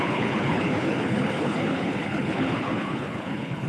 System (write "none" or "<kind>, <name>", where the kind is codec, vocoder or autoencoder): codec, HILCodec